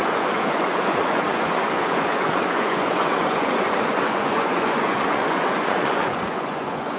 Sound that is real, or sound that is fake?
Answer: fake